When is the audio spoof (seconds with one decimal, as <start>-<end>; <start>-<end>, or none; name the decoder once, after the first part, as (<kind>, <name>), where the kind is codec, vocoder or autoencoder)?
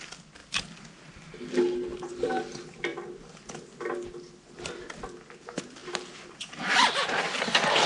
0.4-1.1 (vocoder, BigVGAN v2); 1.9-2.4; 2.9-3.5; 5.8-7.9